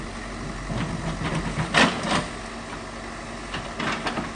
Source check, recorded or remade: recorded